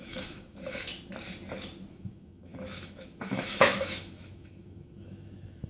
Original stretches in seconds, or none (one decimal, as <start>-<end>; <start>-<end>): 0.9-1.9